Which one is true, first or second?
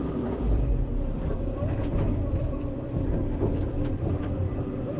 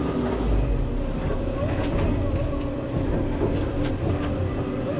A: second